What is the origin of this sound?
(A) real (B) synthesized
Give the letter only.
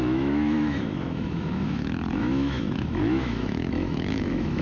B